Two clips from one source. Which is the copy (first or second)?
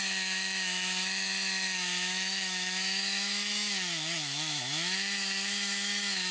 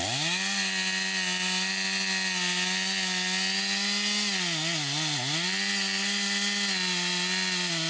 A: first